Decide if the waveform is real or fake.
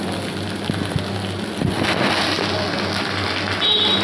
real